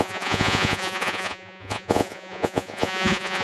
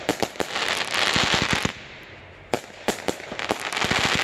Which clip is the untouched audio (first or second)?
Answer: second